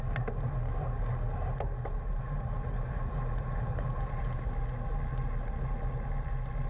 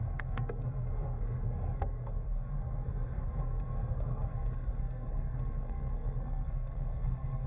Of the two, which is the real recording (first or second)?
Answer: first